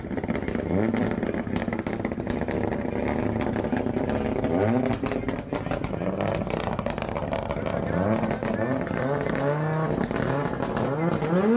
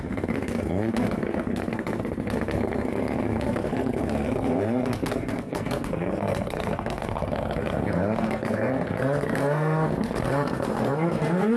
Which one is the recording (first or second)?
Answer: first